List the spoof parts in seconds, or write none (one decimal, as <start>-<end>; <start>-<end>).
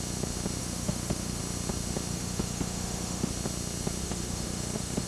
0.6-1.4; 2.1-3.3; 4.0-5.1